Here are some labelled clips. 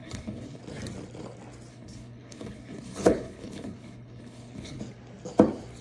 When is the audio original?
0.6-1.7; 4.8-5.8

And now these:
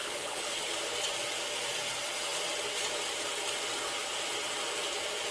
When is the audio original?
0.7-5.3

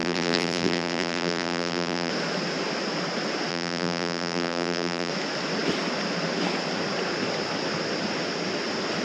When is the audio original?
2.1-3.5; 5.1-9.0

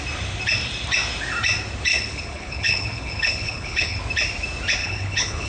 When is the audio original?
0.0-1.9; 4.0-4.8

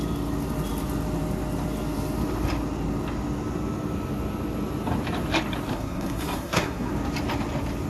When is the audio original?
0.0-5.7; 6.9-7.9

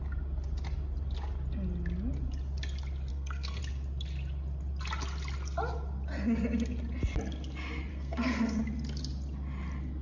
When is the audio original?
0.0-3.1; 3.6-7.9; 8.6-10.0